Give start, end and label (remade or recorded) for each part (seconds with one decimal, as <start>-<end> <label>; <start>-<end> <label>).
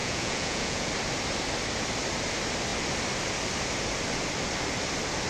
0.0-0.9 remade; 0.9-5.3 recorded